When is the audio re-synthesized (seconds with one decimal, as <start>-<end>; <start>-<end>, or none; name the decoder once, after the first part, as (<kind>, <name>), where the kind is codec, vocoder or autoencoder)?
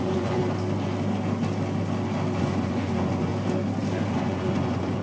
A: 0.0-0.4 (vocoder, Vocos); 2.4-3.3; 4.1-5.0